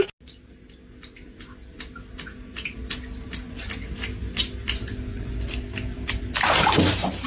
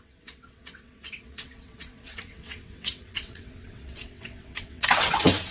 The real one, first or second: first